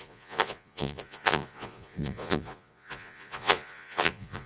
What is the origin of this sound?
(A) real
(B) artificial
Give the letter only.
B